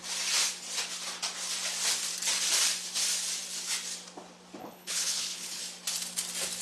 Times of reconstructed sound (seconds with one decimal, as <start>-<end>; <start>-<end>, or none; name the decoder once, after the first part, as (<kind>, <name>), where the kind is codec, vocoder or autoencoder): 4.6-5.6 (codec, HILCodec)